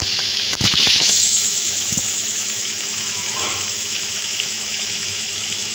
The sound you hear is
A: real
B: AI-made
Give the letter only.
B